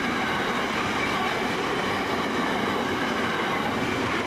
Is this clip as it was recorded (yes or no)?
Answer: yes